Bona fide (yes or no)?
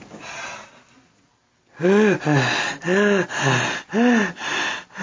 yes